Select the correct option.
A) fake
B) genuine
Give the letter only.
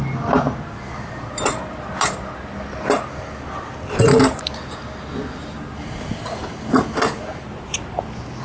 B